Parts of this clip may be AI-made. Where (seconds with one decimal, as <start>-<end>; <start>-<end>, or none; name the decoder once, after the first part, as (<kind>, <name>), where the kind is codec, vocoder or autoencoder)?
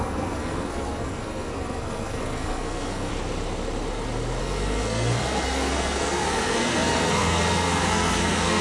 0.0-3.1 (codec, SNAC); 4.4-8.6